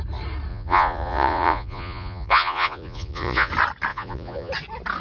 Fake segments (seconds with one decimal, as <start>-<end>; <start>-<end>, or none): 0.5-3.5; 3.9-4.5